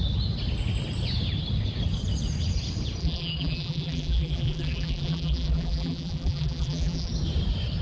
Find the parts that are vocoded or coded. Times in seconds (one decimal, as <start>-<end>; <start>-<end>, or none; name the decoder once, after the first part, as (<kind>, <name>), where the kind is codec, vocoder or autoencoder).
3.0-7.1 (vocoder, BigVGAN v2)